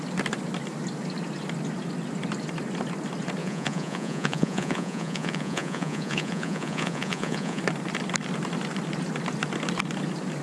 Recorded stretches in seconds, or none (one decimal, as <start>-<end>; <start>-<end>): 0.0-3.4; 7.6-10.4